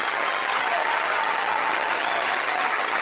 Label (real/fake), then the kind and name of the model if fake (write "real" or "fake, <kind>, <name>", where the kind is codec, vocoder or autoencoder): fake, vocoder, HiFi-GAN